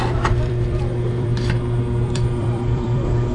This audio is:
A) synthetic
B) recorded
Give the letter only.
A